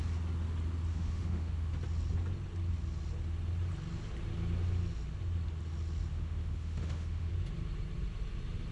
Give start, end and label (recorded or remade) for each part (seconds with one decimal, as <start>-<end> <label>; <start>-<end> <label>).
0.0-0.9 recorded; 0.9-1.7 remade; 1.7-6.1 recorded; 6.1-7.3 remade; 7.3-8.7 recorded